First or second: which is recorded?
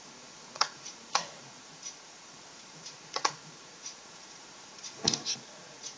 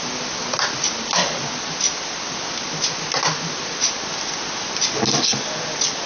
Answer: second